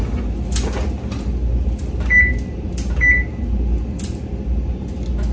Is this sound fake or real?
real